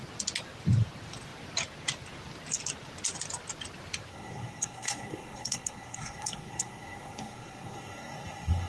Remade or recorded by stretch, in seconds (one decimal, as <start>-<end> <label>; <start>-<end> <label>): 0.0-4.1 recorded; 4.1-8.7 remade